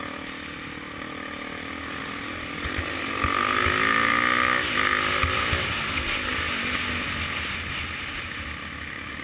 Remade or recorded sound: recorded